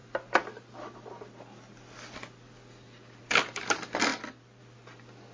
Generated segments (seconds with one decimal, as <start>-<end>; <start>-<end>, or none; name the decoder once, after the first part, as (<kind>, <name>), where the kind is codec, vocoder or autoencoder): none